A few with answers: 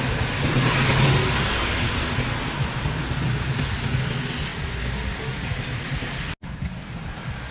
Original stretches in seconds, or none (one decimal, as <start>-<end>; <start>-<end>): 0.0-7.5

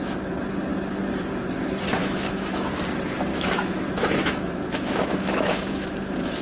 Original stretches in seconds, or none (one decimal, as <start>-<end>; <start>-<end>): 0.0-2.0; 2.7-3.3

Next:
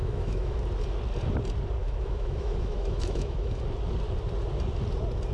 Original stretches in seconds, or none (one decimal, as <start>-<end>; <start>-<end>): 0.6-1.8; 3.6-5.3

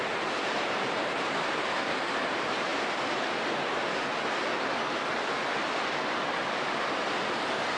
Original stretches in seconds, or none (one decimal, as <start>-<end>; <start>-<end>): 5.6-6.5

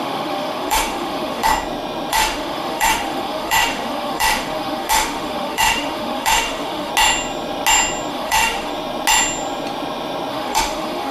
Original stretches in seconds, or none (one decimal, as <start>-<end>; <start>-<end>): 1.5-2.1; 6.9-8.1; 8.7-10.3